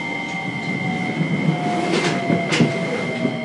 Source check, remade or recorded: recorded